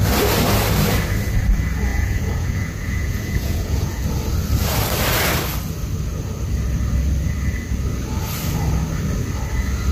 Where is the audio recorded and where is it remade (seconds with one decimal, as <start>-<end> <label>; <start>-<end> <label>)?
0.0-1.9 recorded; 1.9-4.0 remade; 4.0-9.9 recorded